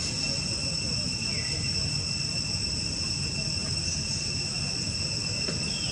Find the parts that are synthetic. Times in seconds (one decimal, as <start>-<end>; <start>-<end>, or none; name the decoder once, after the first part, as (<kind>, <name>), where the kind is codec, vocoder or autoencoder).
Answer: 1.3-2.8 (vocoder, BigVGAN v2); 3.6-4.4; 5.2-5.9